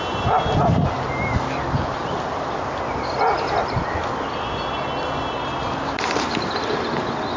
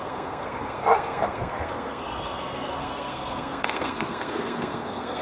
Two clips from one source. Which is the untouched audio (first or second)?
first